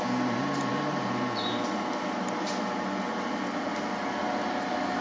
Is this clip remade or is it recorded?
recorded